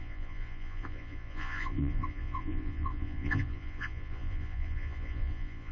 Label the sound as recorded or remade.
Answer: remade